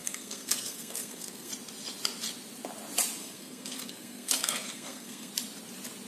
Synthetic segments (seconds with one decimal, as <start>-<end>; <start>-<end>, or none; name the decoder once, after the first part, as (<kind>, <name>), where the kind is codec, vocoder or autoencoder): 0.0-1.5 (codec, SNAC); 3.2-5.3